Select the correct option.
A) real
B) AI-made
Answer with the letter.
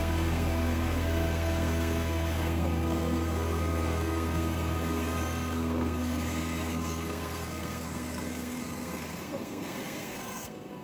B